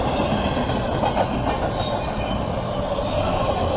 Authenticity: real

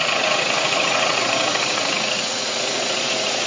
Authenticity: fake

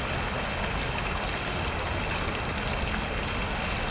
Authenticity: real